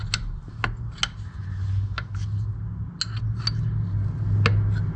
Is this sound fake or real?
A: real